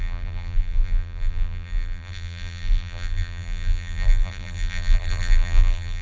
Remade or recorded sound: remade